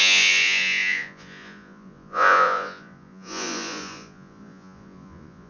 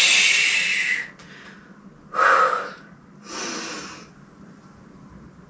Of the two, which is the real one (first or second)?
second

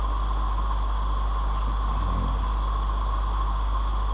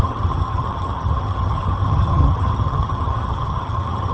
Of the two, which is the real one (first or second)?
first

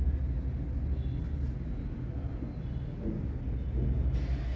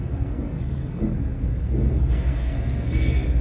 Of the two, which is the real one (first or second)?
first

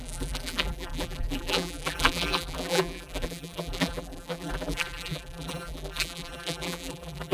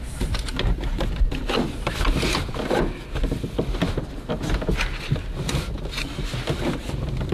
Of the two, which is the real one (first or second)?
second